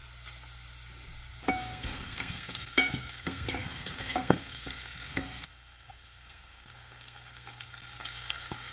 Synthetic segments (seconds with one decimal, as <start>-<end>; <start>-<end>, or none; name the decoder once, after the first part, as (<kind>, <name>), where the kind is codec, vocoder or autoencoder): 1.5-8.7 (codec, SNAC)

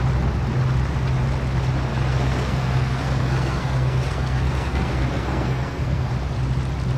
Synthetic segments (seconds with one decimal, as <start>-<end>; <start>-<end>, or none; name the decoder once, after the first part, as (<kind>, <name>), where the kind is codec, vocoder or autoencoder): 1.9-6.1 (codec, SNAC)

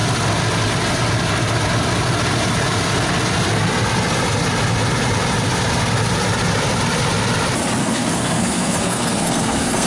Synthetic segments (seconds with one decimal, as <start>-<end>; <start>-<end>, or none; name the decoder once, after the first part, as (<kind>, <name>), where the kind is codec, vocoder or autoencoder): 7.8-9.9 (codec, SNAC)

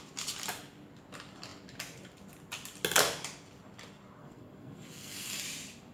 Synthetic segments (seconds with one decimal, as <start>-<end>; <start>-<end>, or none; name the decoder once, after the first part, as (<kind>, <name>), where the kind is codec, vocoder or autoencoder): 4.2-5.4 (codec, SNAC)

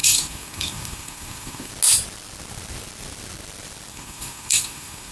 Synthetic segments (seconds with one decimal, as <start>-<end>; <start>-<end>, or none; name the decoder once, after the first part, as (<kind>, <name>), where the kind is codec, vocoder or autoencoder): 0.0-1.7 (codec, SNAC); 3.9-5.1